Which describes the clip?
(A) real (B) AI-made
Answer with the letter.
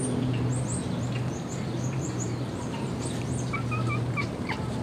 B